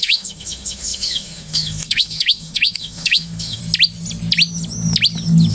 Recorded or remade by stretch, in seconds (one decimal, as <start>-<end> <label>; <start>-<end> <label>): 0.0-3.6 remade; 3.6-5.5 recorded